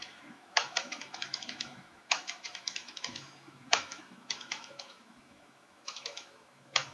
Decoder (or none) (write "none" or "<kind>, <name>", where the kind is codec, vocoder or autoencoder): autoencoder, DAC-VAE